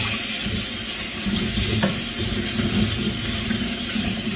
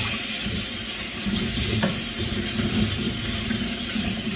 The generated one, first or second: second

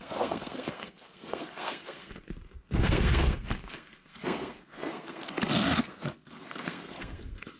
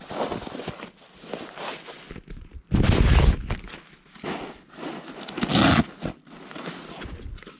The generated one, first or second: first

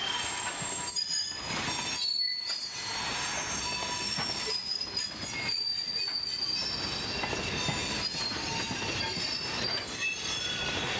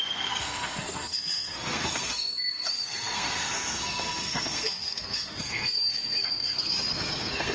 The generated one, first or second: second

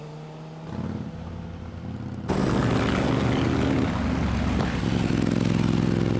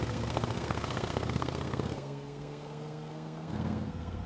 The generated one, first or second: second